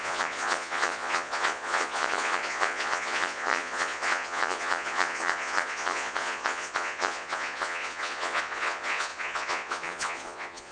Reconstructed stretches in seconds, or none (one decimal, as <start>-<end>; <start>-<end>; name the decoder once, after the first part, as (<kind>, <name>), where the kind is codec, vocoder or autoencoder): 0.0-10.7 (vocoder, Vocos)